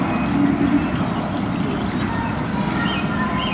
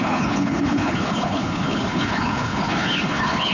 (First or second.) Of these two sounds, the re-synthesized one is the second